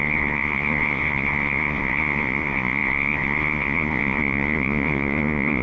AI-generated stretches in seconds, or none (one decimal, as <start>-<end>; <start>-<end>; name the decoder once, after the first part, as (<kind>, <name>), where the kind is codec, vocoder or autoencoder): 0.0-5.6 (vocoder, Vocos)